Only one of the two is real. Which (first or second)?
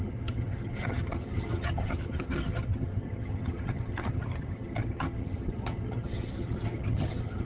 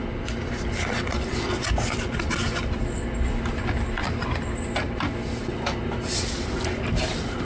second